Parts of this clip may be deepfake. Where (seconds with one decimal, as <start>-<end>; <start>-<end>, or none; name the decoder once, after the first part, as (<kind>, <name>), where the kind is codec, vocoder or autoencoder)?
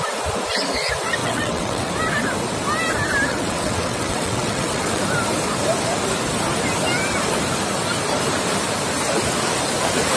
1.2-1.9 (vocoder, WaveNeXt); 3.3-5.0